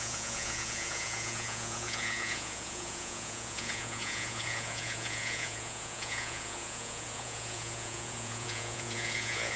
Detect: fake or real fake